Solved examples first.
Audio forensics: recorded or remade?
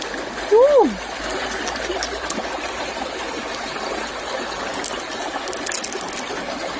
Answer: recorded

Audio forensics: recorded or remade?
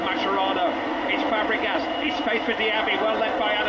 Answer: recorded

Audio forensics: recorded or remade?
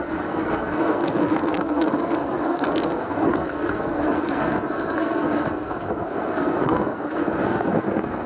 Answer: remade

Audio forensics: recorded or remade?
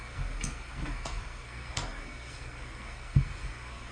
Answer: remade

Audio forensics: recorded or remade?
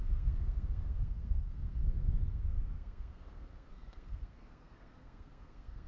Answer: remade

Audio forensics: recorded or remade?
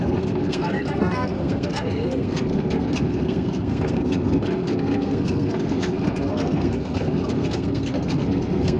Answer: remade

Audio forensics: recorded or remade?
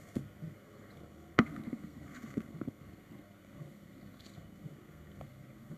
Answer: remade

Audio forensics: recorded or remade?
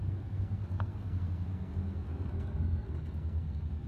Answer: remade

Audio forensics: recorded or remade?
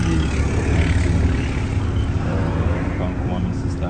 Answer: recorded